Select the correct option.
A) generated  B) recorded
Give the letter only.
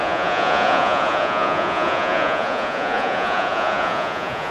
A